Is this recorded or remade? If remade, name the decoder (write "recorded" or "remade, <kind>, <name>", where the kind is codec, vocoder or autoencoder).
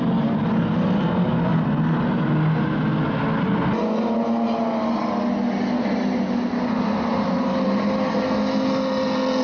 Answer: recorded